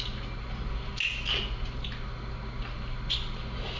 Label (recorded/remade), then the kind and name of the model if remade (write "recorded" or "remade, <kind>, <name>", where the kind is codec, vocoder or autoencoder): recorded